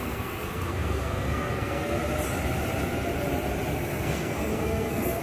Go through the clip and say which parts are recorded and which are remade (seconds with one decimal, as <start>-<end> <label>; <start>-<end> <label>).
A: 0.0-2.0 remade; 2.0-3.7 recorded; 3.7-5.2 remade